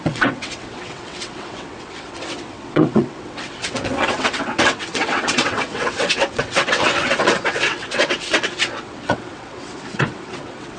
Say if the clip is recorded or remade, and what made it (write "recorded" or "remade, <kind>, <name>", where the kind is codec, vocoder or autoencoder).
remade, vocoder, WaveNeXt